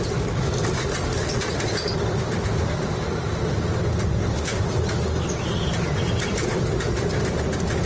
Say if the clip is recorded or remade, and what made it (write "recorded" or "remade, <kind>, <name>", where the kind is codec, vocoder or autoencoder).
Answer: recorded